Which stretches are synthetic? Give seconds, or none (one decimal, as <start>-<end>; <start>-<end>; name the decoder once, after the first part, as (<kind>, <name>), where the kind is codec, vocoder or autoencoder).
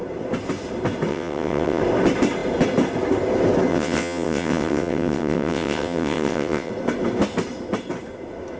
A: 1.1-1.8 (vocoder, WaveNeXt); 3.7-6.7